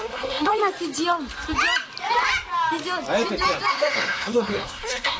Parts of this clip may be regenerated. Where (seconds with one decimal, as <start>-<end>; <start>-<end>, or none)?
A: 0.0-0.6; 3.7-5.2